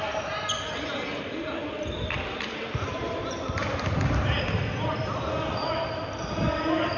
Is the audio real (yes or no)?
yes